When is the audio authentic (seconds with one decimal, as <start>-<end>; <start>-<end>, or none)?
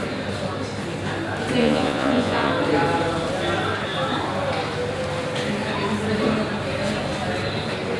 0.0-1.6; 2.5-8.0